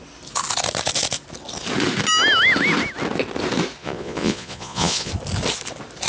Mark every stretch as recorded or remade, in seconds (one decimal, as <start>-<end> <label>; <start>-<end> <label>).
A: 0.0-3.8 recorded; 3.8-5.1 remade; 5.1-6.1 recorded